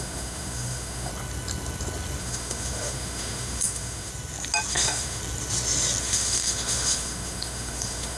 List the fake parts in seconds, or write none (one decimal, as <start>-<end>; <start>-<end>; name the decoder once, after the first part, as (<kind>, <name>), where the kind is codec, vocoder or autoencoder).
0.0-1.1 (autoencoder, DAC-VAE); 2.2-4.1; 4.7-5.2; 6.0-8.2